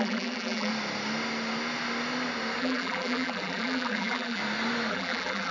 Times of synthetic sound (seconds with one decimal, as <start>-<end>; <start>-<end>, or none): 0.0-0.7; 2.6-4.4; 4.9-5.5

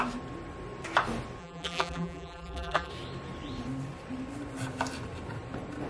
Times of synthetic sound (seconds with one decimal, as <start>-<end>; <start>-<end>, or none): 1.4-2.9

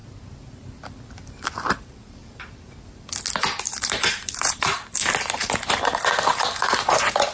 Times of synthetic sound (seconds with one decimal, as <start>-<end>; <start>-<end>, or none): 1.8-2.2; 3.7-4.7; 6.6-7.3

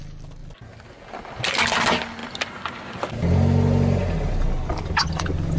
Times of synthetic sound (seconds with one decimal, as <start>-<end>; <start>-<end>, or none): none

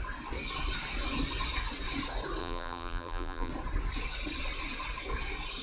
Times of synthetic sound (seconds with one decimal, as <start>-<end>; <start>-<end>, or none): 2.4-3.5